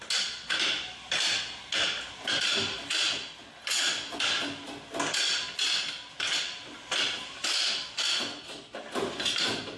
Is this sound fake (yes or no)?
no